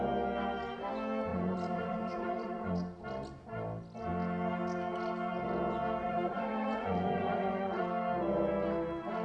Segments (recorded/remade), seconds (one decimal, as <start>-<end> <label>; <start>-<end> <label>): 0.0-1.3 recorded; 1.3-2.7 remade; 2.7-6.0 recorded; 6.0-7.8 remade; 7.8-9.2 recorded